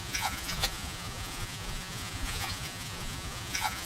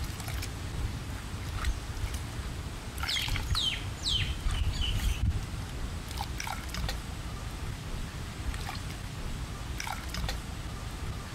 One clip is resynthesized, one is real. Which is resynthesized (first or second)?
first